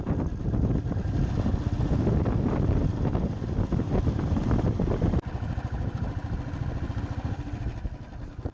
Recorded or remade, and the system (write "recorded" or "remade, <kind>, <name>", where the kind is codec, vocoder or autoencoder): recorded